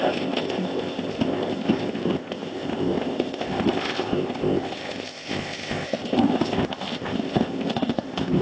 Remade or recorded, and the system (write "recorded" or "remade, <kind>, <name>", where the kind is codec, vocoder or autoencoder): remade, codec, ZipCodec